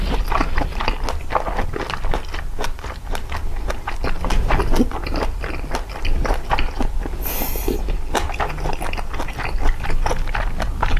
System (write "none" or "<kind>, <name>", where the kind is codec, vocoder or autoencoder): none